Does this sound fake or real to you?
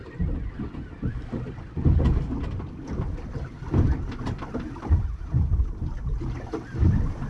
fake